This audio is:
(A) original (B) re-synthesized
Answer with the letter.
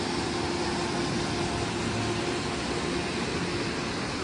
A